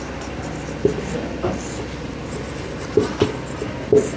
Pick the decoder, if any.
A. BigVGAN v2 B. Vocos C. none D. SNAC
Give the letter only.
C